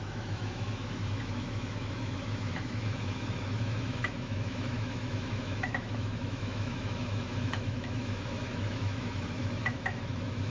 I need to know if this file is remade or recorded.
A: remade